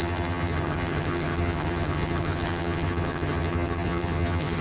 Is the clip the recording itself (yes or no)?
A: no